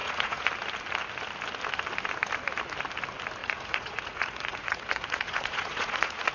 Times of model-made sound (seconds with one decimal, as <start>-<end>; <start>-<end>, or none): 0.0-0.5; 3.4-6.3